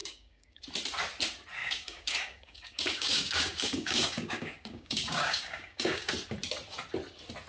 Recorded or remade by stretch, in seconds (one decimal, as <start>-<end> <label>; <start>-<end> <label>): 0.0-0.6 remade; 0.6-1.6 recorded; 1.6-6.1 remade; 6.1-7.5 recorded

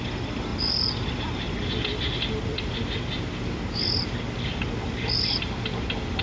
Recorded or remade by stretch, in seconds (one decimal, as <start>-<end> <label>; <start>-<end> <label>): 0.0-6.2 recorded

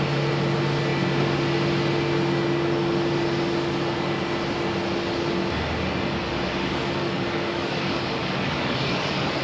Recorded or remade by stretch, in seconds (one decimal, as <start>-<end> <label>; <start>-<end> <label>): 0.0-7.0 recorded; 7.0-9.4 remade

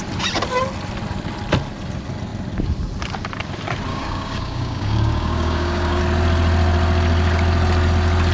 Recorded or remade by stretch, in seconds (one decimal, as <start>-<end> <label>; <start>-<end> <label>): 0.0-3.9 recorded; 3.9-6.0 remade; 6.0-8.3 recorded

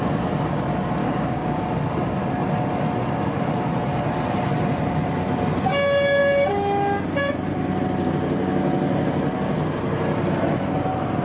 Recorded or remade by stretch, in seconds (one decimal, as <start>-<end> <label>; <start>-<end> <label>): 0.0-1.0 recorded; 1.0-1.6 remade; 1.6-11.2 recorded